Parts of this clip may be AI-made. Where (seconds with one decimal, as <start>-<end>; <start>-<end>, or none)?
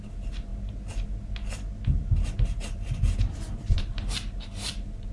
0.0-0.5; 3.3-5.1